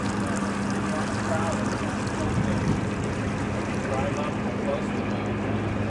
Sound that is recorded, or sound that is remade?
recorded